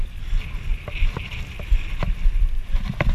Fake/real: real